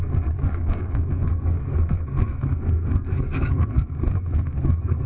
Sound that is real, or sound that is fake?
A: fake